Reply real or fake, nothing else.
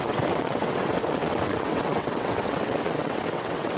fake